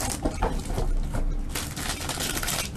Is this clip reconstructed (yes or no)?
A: no